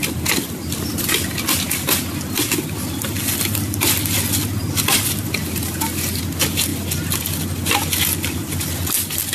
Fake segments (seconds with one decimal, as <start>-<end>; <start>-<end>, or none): none